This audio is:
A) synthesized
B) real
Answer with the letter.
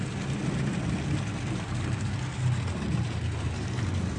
B